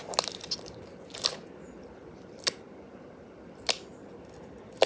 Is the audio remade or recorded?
recorded